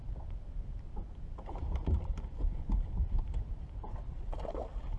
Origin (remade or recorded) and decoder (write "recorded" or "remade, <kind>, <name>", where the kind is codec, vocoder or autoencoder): recorded